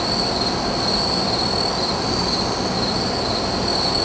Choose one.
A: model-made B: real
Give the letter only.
B